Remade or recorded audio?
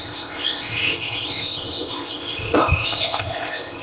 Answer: remade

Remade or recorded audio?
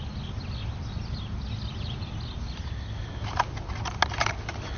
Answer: recorded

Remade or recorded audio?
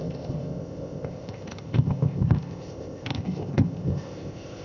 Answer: remade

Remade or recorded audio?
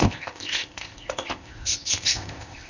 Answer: remade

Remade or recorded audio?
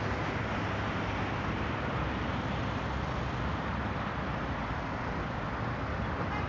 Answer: recorded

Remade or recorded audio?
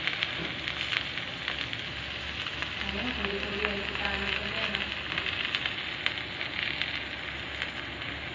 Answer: recorded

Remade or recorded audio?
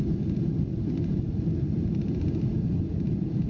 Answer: recorded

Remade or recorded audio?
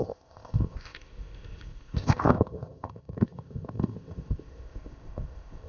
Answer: remade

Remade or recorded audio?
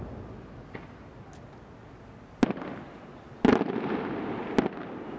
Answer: recorded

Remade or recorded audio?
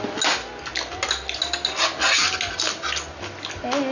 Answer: recorded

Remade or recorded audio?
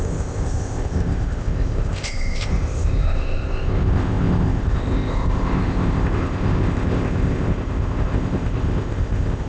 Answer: remade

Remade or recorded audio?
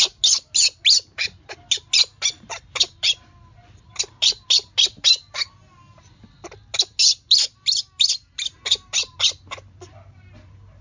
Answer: recorded